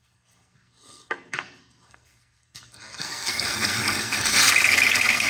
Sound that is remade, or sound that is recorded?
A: remade